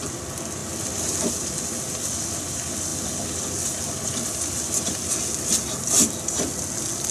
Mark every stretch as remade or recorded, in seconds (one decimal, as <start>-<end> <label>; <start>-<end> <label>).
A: 0.0-7.1 recorded